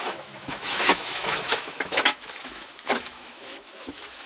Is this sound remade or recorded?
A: remade